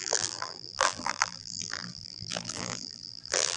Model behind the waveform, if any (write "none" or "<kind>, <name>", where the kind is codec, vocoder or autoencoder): vocoder, BigVGAN v2